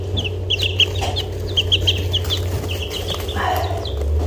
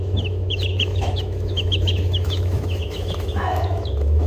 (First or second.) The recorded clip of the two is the first